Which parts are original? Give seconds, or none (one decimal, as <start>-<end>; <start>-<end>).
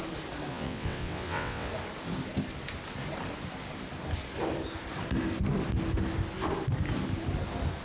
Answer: 0.0-0.5; 1.7-7.8